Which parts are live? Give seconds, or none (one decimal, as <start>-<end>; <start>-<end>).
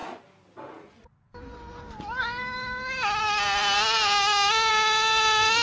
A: 0.0-5.6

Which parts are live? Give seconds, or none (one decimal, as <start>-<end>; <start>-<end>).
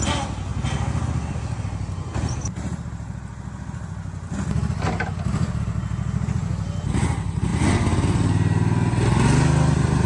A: 0.0-10.1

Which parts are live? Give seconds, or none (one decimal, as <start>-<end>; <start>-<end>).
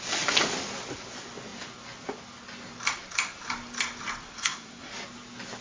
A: 0.0-4.2; 4.9-5.6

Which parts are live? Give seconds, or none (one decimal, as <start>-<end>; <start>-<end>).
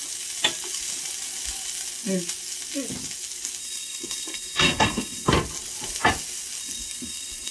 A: 0.0-3.6; 5.3-6.6